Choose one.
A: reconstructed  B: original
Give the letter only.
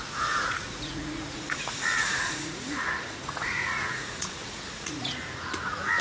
A